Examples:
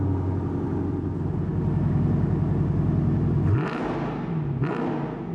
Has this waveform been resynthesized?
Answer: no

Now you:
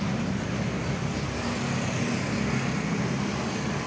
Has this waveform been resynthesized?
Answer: no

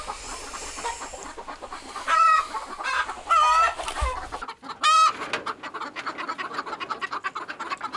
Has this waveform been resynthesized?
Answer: no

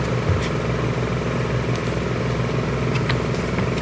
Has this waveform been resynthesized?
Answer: no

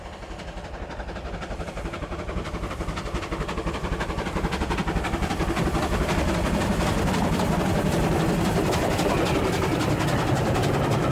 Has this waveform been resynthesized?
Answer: no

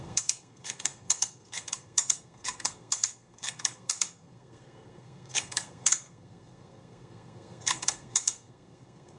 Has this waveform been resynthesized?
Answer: yes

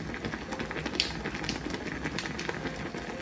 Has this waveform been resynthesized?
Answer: no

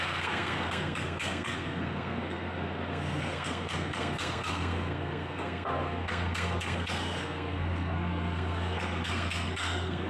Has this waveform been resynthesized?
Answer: yes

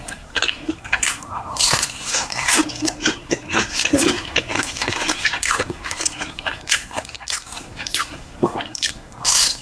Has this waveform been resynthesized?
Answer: yes